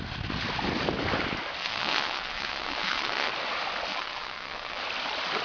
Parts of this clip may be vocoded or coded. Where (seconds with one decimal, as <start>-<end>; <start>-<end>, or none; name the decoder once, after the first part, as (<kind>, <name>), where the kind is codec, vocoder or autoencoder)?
1.6-3.3 (vocoder, WaveNeXt); 3.9-4.8